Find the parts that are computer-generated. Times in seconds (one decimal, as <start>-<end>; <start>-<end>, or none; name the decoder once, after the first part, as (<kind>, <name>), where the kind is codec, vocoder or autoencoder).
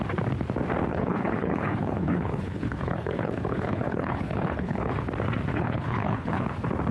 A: 0.9-5.0 (codec, HILCodec); 5.5-6.4